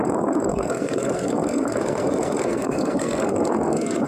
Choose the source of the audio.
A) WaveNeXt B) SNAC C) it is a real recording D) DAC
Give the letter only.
B